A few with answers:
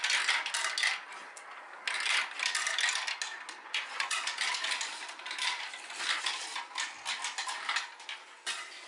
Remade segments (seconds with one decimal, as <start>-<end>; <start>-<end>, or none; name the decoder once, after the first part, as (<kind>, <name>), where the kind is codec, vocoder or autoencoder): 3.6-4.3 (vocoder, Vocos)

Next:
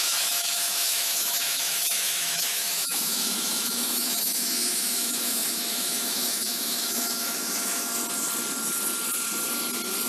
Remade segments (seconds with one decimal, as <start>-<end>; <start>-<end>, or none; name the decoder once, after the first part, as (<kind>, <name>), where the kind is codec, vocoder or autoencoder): 0.0-7.9 (autoencoder, DAC-VAE)

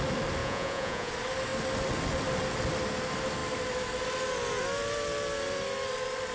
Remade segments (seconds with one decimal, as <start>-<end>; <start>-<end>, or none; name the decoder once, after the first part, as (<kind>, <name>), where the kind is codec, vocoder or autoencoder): 0.4-1.1 (vocoder, Vocos)

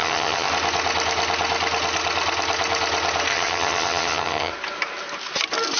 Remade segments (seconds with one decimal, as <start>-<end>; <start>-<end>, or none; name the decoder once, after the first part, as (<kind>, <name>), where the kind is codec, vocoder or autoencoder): 0.0-0.5 (vocoder, HiFi-GAN); 3.3-4.5

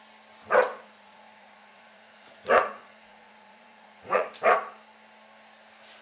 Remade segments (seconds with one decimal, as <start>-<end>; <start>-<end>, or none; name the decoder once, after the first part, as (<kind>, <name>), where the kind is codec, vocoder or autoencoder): 0.7-4.3 (vocoder, Vocos)

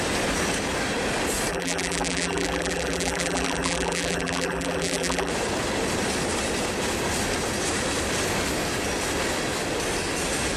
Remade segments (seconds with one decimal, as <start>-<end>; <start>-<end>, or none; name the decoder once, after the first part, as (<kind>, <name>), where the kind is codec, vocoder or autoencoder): 1.5-5.3 (vocoder, BigVGAN v2)